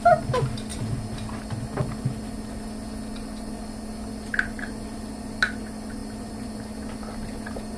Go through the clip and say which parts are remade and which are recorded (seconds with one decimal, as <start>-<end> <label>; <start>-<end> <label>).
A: 0.0-7.8 recorded